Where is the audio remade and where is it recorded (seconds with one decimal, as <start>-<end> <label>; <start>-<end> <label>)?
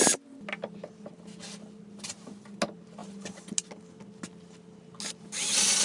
0.0-5.8 recorded